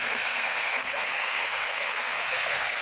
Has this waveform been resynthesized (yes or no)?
yes